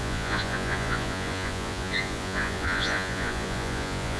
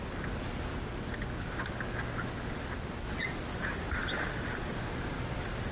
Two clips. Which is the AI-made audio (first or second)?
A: first